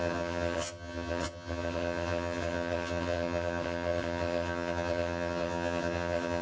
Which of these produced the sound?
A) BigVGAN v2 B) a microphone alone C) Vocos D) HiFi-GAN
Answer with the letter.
D